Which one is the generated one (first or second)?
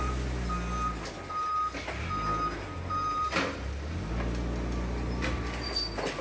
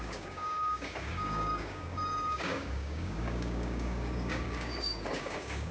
second